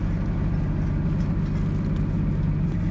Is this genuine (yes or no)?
yes